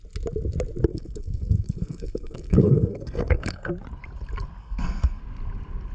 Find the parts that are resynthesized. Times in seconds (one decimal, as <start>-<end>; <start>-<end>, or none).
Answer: 0.9-3.7; 4.6-5.2